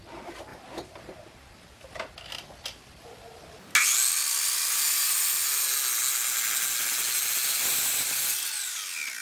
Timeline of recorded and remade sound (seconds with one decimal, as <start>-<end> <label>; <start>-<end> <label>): 0.0-0.5 recorded; 0.5-2.2 remade; 2.2-7.4 recorded; 7.4-8.4 remade; 8.4-9.2 recorded